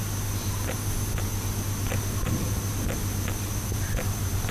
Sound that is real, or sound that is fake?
real